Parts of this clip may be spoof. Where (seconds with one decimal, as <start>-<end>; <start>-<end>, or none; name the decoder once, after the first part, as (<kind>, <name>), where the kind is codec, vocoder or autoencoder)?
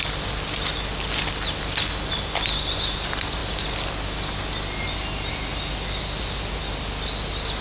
none